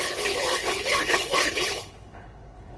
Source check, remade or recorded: remade